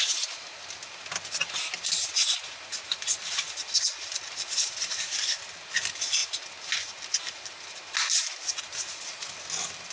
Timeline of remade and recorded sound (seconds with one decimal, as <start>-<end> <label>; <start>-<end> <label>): 0.0-9.9 recorded